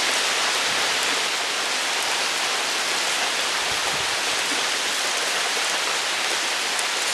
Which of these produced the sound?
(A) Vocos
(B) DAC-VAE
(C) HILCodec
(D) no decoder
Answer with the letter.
D